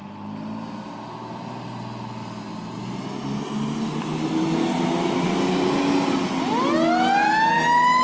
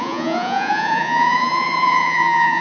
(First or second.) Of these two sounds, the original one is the first